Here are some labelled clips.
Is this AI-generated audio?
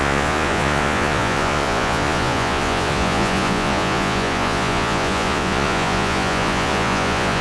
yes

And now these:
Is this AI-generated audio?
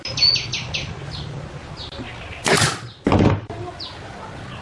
no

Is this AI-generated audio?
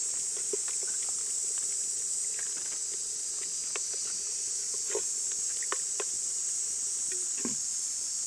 no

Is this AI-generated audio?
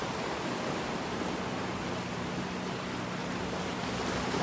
no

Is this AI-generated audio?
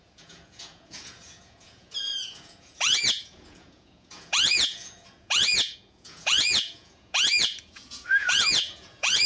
yes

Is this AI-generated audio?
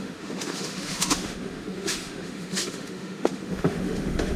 yes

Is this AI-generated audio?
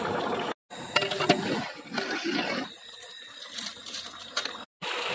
no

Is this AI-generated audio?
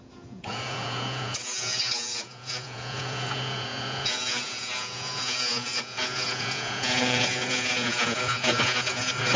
yes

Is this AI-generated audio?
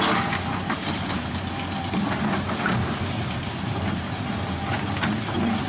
no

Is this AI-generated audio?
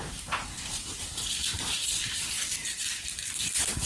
yes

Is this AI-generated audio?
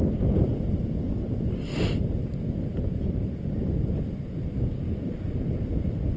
no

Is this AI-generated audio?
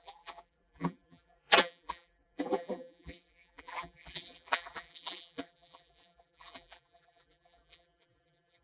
yes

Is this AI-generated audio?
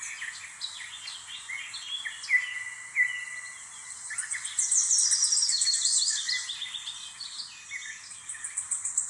no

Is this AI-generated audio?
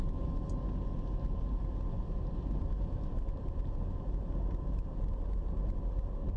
no